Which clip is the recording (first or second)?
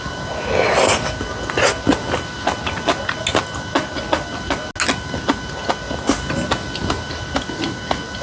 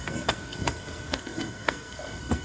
first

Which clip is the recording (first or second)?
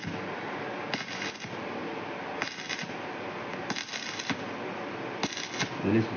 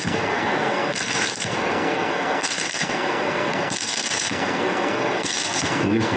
first